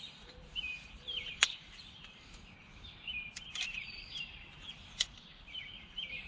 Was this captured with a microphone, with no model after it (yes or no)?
no